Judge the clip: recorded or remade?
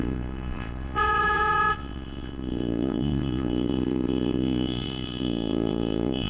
remade